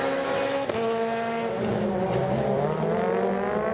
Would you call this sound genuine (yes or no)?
yes